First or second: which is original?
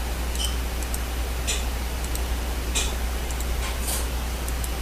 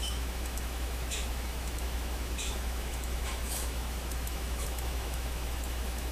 first